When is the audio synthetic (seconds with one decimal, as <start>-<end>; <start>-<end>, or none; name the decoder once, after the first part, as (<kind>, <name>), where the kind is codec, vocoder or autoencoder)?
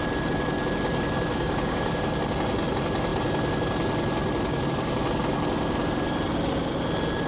1.3-1.9 (codec, DAC)